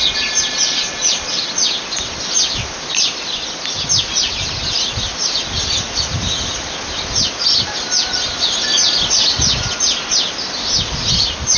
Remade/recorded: recorded